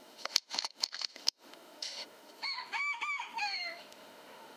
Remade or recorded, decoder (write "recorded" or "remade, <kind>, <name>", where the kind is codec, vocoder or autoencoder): remade, autoencoder, DAC-VAE